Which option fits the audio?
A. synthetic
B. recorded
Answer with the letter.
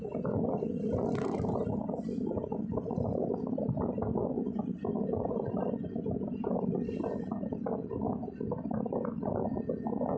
B